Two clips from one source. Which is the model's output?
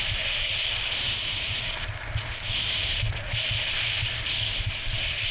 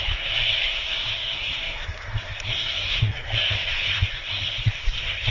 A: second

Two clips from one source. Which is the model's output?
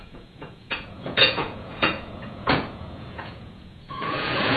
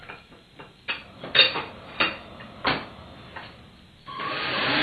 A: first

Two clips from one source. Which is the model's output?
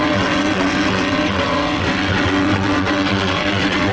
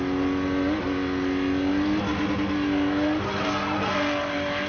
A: first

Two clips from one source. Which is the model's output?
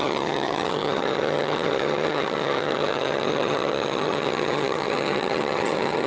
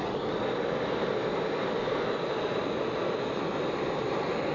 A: first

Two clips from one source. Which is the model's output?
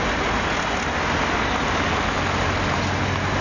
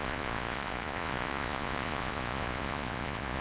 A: second